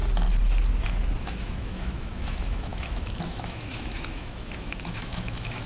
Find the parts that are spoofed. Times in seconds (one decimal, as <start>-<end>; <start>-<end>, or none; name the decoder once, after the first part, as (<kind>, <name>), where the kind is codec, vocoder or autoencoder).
1.2-5.7 (autoencoder, DAC-VAE)